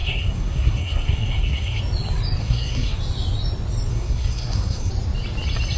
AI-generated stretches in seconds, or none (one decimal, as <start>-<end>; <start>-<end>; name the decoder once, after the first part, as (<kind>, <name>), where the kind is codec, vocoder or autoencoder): 0.0-1.8 (codec, SNAC); 2.4-3.0; 3.9-4.9